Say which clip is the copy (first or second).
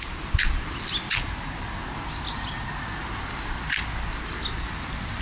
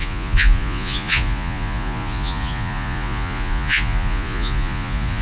second